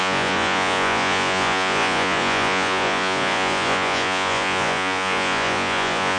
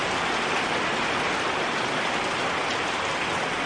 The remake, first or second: first